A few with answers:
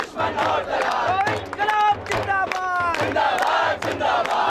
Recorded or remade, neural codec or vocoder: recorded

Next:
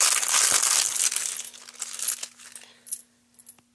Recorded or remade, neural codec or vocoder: recorded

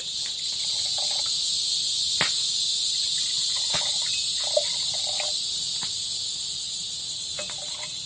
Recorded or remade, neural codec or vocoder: recorded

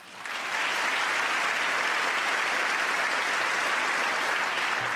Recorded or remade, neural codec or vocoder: recorded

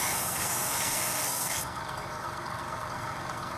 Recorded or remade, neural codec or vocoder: remade, codec, SNAC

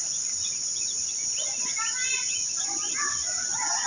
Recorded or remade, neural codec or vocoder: recorded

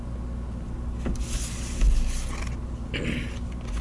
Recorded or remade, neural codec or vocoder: recorded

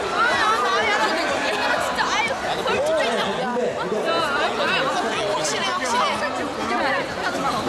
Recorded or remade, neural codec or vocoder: recorded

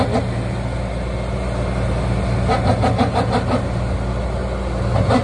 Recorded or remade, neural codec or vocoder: recorded